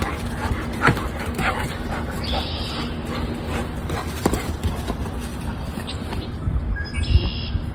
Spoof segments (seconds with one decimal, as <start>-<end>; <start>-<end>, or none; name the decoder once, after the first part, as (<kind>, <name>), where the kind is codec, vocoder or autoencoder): 0.4-2.3 (vocoder, BigVGAN v2); 3.6-4.7; 5.3-7.0